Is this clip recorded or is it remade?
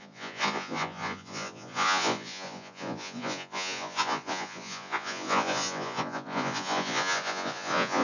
remade